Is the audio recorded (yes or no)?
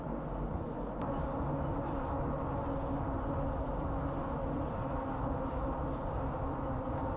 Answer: yes